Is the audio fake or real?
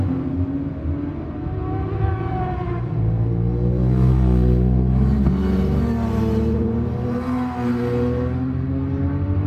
real